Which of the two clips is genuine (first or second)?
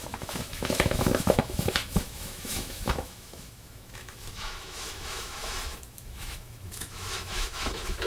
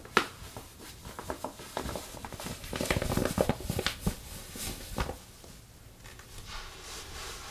second